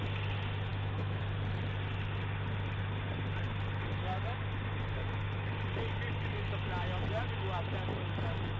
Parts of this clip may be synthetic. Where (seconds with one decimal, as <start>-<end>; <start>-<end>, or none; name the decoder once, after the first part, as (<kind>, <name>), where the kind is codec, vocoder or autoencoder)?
0.7-1.2 (autoencoder, DAC-VAE); 5.0-5.5